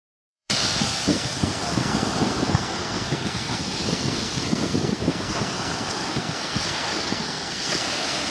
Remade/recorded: remade